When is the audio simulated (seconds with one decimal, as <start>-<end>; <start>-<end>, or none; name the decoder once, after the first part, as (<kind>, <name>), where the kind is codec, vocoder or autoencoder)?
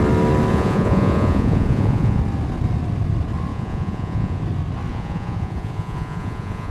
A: 0.5-2.2 (vocoder, Vocos); 3.5-4.4; 4.9-6.7